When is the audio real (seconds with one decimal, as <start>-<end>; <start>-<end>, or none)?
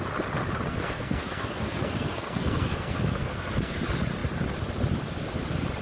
0.0-0.7; 3.8-5.8